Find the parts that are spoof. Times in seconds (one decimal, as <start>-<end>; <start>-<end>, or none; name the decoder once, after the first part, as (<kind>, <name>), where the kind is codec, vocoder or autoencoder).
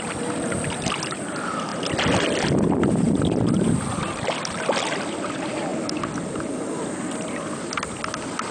5.7-6.6 (vocoder, BigVGAN v2)